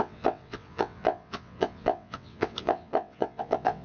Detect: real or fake fake